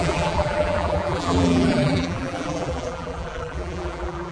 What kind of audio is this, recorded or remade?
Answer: remade